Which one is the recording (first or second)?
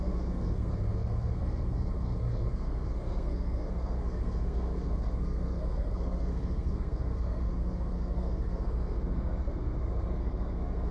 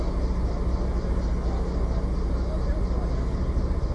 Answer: second